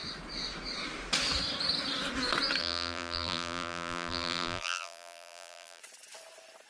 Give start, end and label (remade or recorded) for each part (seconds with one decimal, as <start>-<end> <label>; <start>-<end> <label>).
0.0-2.6 recorded; 2.6-5.8 remade; 5.8-6.7 recorded